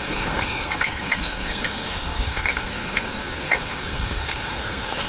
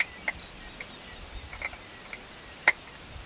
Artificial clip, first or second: first